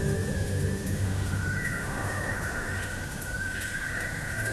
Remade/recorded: remade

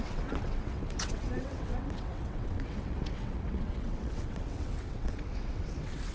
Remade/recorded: remade